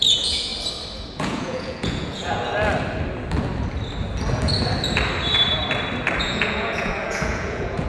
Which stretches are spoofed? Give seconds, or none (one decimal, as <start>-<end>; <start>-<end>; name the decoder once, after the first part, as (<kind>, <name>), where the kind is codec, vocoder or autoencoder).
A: 0.0-0.5 (vocoder, Vocos); 1.1-2.5; 6.2-7.9